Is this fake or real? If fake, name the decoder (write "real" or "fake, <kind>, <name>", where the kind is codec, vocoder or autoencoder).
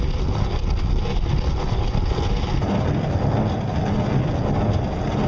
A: real